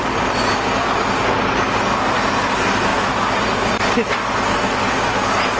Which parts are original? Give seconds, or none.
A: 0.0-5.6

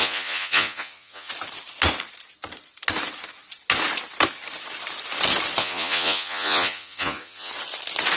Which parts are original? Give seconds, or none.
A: 1.3-5.6; 7.5-8.2

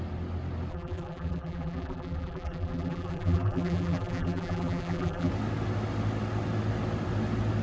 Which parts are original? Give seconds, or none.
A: 0.0-0.7; 5.3-7.6

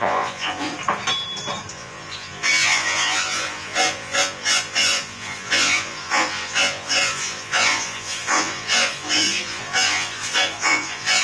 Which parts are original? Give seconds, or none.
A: 0.7-1.7

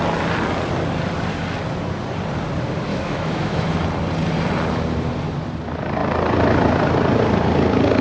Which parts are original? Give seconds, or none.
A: 0.0-2.9; 3.7-8.0

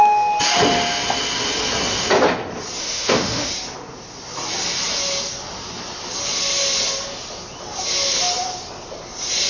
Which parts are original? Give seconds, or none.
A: 0.0-2.8; 3.5-9.5